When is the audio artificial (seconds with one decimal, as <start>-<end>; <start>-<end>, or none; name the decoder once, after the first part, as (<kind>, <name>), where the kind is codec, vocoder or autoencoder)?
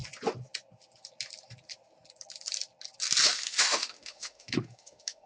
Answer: 3.2-5.3 (autoencoder, DAC-VAE)